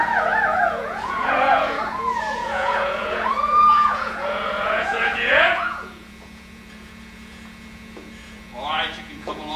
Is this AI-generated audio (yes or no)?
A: yes